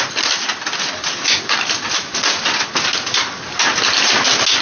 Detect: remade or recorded recorded